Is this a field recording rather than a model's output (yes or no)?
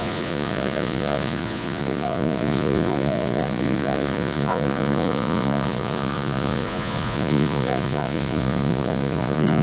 no